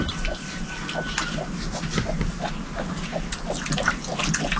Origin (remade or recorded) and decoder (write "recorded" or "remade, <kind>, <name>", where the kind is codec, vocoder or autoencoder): recorded